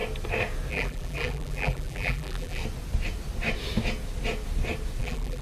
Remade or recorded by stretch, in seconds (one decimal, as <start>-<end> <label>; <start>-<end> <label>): 0.0-0.7 recorded; 0.7-2.6 remade; 2.6-5.0 recorded; 5.0-5.4 remade